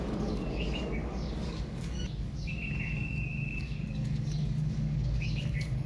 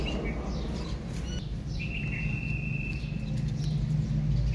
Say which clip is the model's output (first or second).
first